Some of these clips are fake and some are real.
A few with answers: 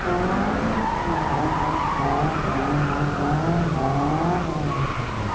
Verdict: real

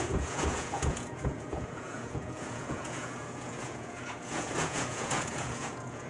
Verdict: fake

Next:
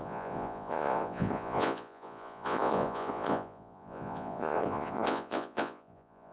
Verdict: fake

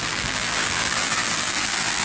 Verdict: fake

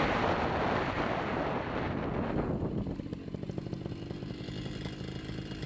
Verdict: real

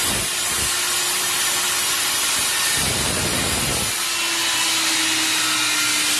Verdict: real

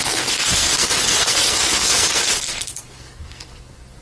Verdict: fake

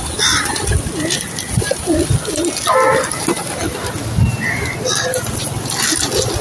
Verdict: real